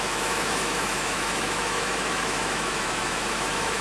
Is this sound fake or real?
fake